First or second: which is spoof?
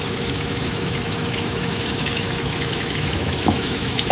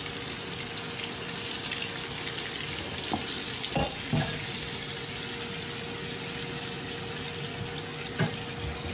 first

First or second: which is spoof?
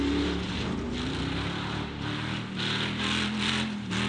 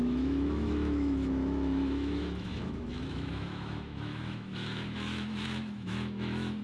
second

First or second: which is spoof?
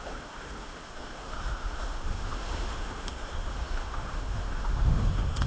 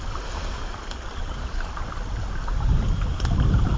first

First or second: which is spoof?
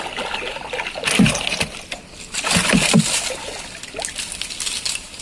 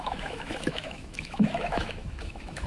second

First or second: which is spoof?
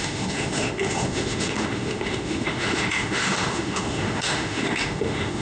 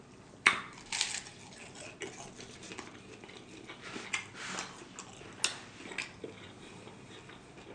first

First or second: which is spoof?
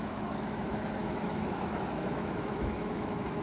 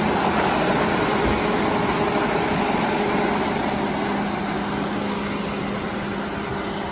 first